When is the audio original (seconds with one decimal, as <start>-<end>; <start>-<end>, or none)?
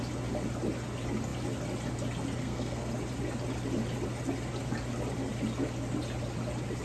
0.0-2.4; 2.9-6.8